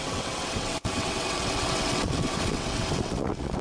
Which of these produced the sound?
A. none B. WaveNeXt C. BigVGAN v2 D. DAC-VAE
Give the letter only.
B